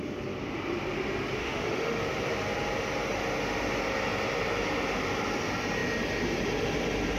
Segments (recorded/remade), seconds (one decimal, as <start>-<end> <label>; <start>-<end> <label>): 0.0-1.4 recorded; 1.4-2.0 remade; 2.0-7.2 recorded